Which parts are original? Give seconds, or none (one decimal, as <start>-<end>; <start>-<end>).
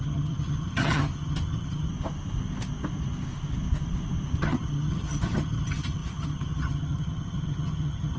1.9-4.4